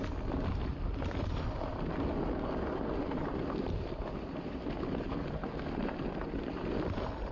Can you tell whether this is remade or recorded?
recorded